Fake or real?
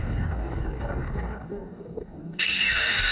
fake